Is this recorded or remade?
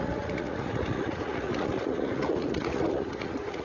remade